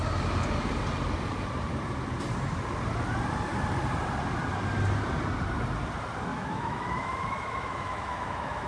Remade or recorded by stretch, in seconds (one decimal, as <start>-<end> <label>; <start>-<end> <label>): 0.0-6.3 recorded; 6.3-8.7 remade